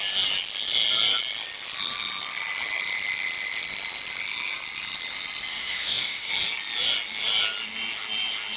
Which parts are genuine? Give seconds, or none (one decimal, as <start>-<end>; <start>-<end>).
0.0-5.5; 6.3-8.6